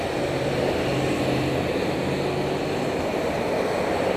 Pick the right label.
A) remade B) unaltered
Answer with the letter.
B